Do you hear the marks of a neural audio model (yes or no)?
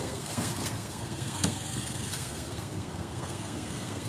yes